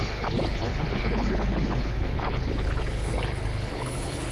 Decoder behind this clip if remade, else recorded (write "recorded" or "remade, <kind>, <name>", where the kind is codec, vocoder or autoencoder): remade, codec, HILCodec